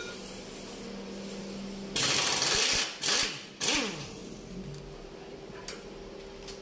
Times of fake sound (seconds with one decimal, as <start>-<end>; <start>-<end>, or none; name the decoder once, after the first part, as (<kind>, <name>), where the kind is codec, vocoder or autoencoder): none